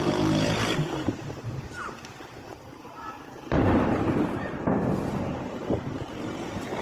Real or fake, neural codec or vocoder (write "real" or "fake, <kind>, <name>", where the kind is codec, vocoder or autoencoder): fake, vocoder, BigVGAN v2